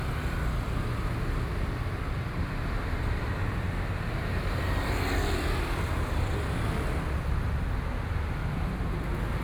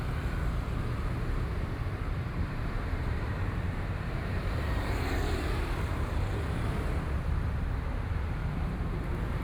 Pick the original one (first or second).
first